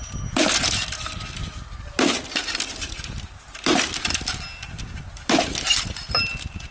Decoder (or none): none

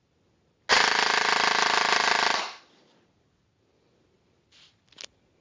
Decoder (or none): none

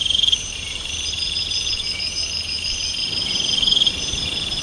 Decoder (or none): vocoder, BigVGAN v2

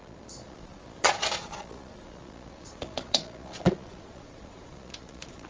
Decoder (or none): vocoder, Vocos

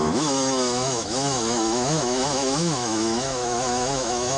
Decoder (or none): autoencoder, DAC-VAE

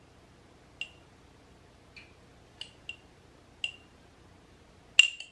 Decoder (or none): none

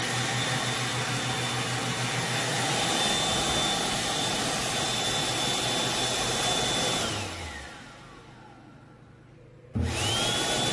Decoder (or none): none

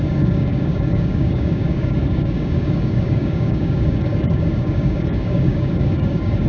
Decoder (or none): codec, DAC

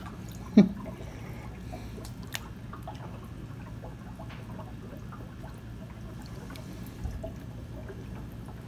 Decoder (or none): none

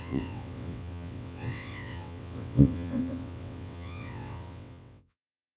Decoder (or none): vocoder, WaveNeXt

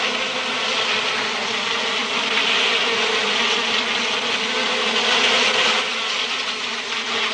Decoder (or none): none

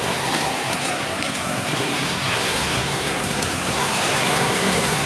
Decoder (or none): codec, SNAC